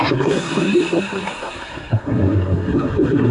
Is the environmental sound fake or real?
fake